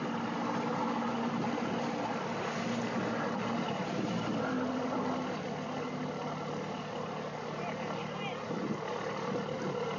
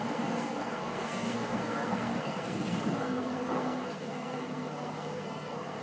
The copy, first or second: second